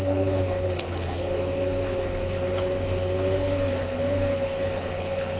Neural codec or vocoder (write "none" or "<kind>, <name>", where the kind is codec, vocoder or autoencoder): codec, HILCodec